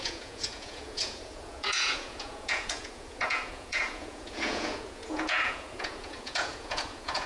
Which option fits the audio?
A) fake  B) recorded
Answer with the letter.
A